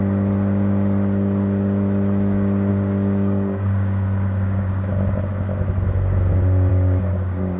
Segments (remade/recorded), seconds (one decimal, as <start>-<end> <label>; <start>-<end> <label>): 0.0-2.7 recorded; 2.7-4.7 remade; 4.7-6.7 recorded; 6.7-7.6 remade